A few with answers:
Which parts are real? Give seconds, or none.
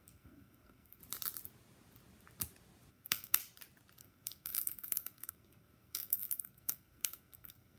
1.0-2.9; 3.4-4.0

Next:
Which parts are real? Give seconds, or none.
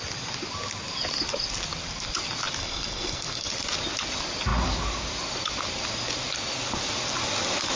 0.0-2.6; 3.5-7.8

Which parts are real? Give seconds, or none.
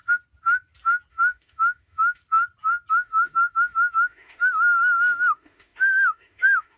0.0-1.1; 2.2-2.9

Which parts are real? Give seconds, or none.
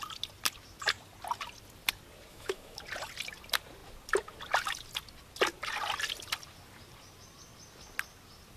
0.0-2.3; 2.8-8.6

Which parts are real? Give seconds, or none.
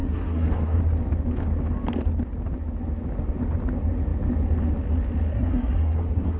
0.8-5.3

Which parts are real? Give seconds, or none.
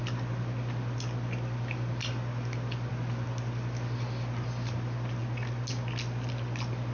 0.0-6.9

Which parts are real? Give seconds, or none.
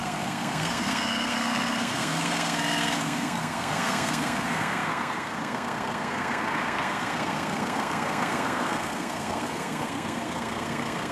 none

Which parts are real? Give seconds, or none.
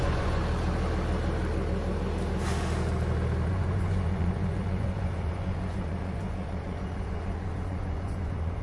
0.4-3.5